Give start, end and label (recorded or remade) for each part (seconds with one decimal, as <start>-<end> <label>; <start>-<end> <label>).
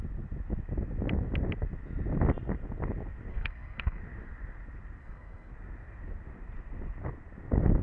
0.0-3.3 recorded; 3.3-4.0 remade; 4.0-5.0 recorded; 5.0-5.5 remade; 5.5-7.8 recorded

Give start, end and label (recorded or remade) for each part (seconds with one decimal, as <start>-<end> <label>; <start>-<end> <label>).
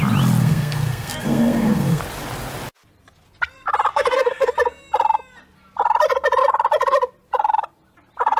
0.0-0.4 recorded; 0.4-2.0 remade; 2.0-3.9 recorded; 3.9-4.5 remade; 4.5-8.4 recorded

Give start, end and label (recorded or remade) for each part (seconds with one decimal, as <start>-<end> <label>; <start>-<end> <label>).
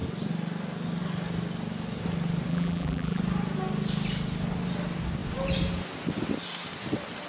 0.0-2.5 recorded; 2.5-3.2 remade; 3.2-7.3 recorded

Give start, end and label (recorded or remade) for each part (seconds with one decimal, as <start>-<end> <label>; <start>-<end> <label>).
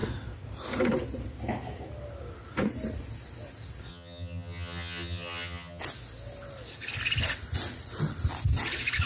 0.0-3.9 recorded; 3.9-5.8 remade; 5.8-9.1 recorded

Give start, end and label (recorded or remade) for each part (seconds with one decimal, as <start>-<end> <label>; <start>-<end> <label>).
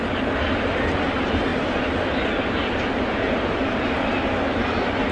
0.0-5.1 recorded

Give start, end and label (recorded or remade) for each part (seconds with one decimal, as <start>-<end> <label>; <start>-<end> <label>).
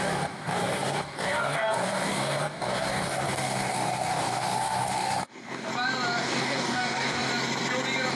0.0-5.7 remade; 5.7-6.2 recorded; 6.2-7.3 remade; 7.3-8.1 recorded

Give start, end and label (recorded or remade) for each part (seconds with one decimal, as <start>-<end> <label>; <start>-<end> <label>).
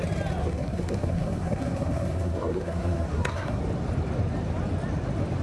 0.0-0.4 recorded; 0.4-3.6 remade; 3.6-5.4 recorded